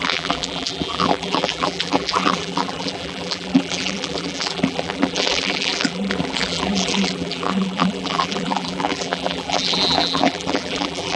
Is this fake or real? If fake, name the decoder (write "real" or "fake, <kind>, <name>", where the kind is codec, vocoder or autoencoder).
fake, vocoder, BigVGAN v2